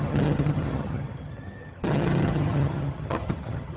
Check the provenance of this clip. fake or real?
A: fake